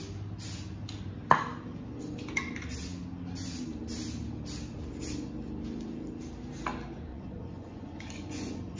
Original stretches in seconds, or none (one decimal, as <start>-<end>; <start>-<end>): 0.0-7.1